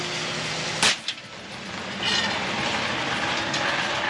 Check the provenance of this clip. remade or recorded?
recorded